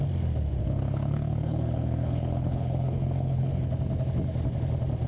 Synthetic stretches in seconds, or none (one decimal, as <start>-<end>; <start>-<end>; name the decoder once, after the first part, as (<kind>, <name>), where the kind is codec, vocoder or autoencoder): 0.6-3.7 (codec, HILCodec)